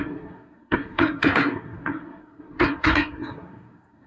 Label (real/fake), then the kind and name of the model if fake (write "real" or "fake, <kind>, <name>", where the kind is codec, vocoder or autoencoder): fake, codec, SNAC